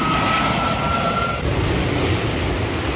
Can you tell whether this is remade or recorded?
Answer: recorded